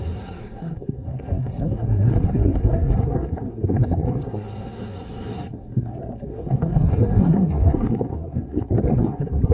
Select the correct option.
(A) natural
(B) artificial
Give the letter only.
B